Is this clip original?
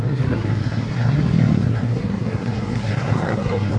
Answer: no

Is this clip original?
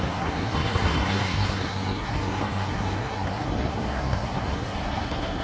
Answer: no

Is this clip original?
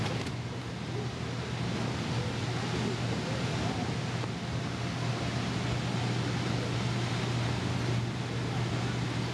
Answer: yes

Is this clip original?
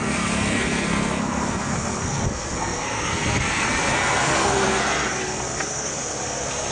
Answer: no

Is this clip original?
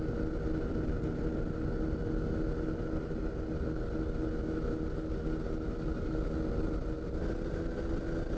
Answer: yes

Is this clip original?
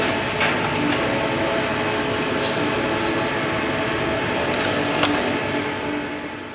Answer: yes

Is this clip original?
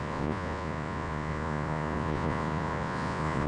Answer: no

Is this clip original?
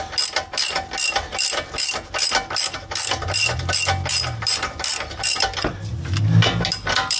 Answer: yes